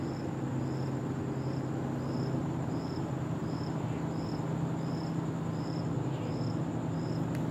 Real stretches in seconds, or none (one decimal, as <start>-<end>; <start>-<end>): 0.0-2.4; 3.4-7.5